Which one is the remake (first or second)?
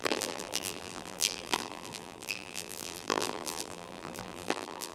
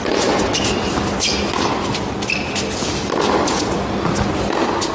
first